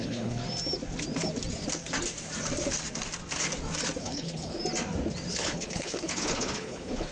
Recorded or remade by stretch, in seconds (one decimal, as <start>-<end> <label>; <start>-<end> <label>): 0.0-0.4 remade; 0.4-4.0 recorded; 4.0-4.6 remade; 4.6-5.3 recorded; 5.3-7.1 remade

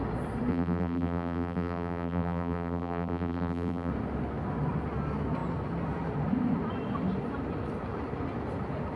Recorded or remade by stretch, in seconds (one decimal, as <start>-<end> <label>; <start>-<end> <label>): 0.0-0.5 recorded; 0.5-3.9 remade; 3.9-9.0 recorded

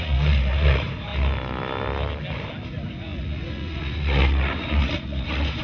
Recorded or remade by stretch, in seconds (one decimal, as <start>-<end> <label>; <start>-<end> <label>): 0.0-1.1 remade; 1.1-2.7 recorded; 2.7-5.6 remade

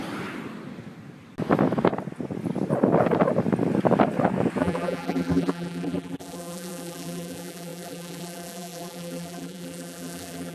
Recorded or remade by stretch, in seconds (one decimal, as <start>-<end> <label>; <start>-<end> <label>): 0.0-4.6 recorded; 4.6-10.5 remade

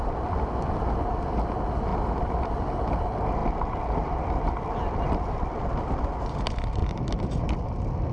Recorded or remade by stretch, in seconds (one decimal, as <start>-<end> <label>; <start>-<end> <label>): 0.0-1.9 recorded; 1.9-2.7 remade; 2.7-3.4 recorded; 3.4-6.2 remade; 6.2-6.8 recorded; 6.8-7.5 remade; 7.5-8.1 recorded

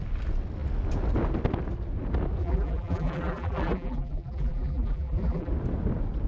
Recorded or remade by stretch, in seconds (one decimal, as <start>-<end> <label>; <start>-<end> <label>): 0.0-2.4 recorded; 2.4-5.5 remade; 5.5-6.3 recorded